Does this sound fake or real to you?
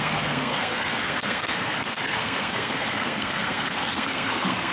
fake